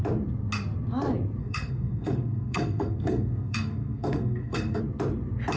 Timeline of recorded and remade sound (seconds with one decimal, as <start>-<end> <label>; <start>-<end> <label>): 0.0-1.4 recorded; 1.4-4.8 remade; 4.8-5.6 recorded